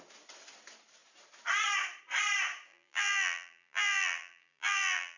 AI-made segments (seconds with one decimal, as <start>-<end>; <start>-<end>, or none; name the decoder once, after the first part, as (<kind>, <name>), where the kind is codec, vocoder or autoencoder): 2.7-5.2 (vocoder, BigVGAN v2)